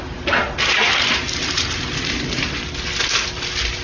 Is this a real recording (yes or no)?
yes